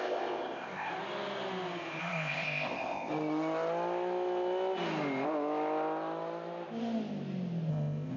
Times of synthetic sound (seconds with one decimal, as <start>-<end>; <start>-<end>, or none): 0.0-0.9; 2.0-3.1; 7.7-8.2